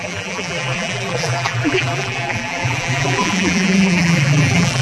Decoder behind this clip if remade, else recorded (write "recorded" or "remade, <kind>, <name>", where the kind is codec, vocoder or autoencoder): remade, vocoder, BigVGAN v2